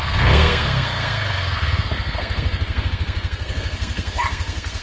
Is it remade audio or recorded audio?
remade